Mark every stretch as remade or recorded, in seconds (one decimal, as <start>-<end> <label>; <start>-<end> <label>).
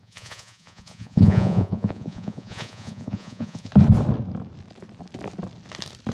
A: 0.0-3.7 remade; 3.7-6.1 recorded